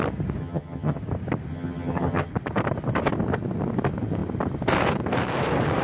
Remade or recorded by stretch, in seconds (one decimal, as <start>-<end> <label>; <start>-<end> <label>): 0.0-0.4 recorded; 0.4-1.0 remade; 1.0-1.5 recorded; 1.5-2.3 remade; 2.3-5.8 recorded